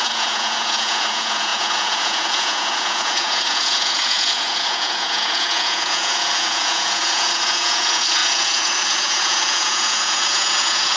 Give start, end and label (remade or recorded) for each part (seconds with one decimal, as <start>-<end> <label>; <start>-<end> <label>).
0.0-11.0 remade